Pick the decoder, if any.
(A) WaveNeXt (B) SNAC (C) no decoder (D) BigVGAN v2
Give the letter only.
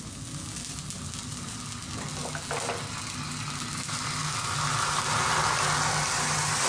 C